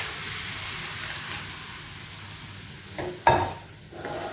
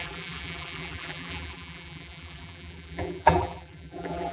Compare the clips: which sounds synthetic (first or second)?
second